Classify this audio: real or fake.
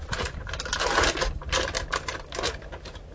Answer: fake